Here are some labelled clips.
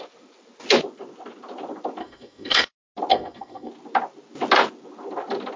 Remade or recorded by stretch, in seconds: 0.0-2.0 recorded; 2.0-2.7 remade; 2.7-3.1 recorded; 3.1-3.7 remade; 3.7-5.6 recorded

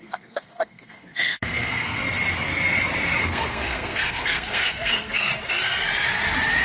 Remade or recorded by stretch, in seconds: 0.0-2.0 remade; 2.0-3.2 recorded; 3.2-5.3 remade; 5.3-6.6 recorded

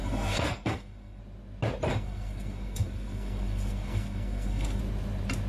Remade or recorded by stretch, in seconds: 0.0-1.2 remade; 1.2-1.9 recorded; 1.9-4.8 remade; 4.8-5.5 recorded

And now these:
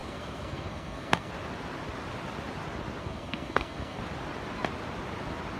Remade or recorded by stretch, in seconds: 0.0-1.3 remade; 1.3-3.0 recorded; 3.0-4.0 remade; 4.0-5.6 recorded

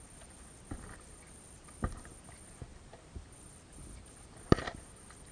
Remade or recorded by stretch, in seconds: 0.0-5.3 recorded